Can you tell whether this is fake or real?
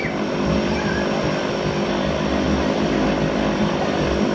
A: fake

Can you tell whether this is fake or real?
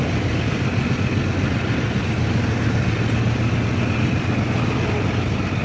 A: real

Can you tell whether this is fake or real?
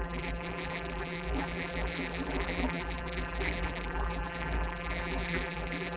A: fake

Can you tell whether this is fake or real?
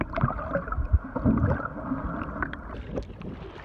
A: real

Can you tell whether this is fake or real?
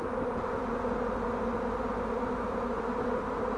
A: real